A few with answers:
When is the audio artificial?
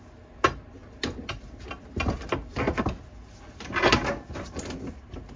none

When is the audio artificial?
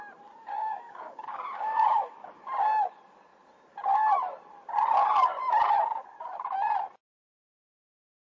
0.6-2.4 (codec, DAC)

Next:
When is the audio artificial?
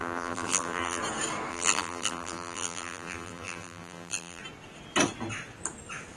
0.0-1.0 (vocoder, BigVGAN v2); 1.5-4.4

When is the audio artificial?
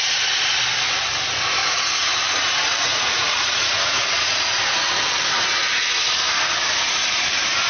1.6-2.2 (vocoder, Vocos); 2.7-4.5